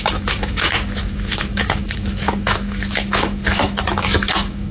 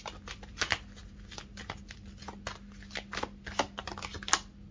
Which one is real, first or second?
second